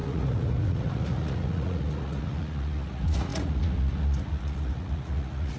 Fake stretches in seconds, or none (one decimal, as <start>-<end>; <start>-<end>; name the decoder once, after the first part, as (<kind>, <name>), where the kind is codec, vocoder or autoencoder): 0.0-5.6 (vocoder, Vocos)